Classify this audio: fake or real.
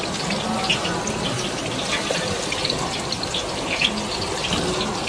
real